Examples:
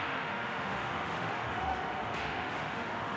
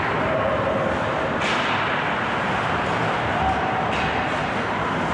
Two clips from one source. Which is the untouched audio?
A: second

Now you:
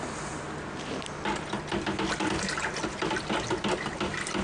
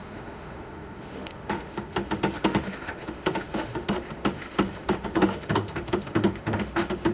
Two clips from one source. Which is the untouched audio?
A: first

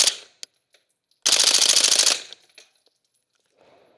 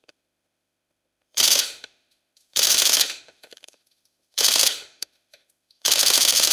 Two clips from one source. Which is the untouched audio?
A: first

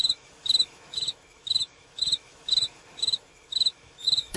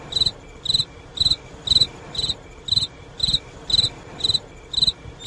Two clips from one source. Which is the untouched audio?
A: second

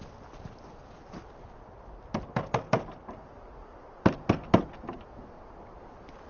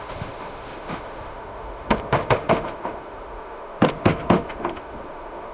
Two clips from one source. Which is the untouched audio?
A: first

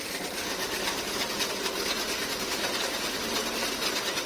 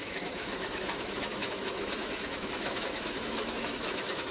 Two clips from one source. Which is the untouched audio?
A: first